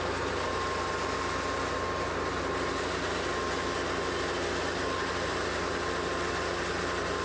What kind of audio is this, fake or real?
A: real